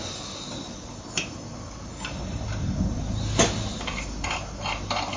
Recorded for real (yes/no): yes